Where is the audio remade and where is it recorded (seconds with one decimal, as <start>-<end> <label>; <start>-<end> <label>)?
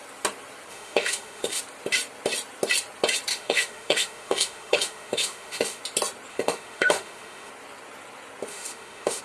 0.0-0.7 recorded; 0.7-1.6 remade; 1.6-3.3 recorded; 3.3-5.8 remade; 5.8-6.3 recorded; 6.3-7.5 remade; 7.5-8.5 recorded; 8.5-9.2 remade